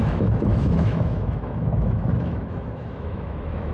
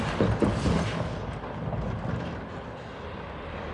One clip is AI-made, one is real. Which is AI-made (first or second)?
first